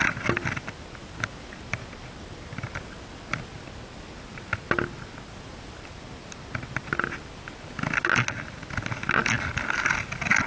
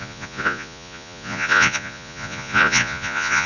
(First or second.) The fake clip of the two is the second